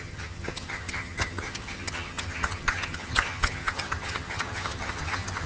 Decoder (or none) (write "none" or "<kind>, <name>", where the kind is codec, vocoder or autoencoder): vocoder, HiFi-GAN